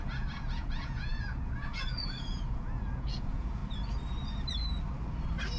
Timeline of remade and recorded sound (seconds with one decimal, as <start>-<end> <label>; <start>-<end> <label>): 0.0-3.6 remade; 3.6-5.6 recorded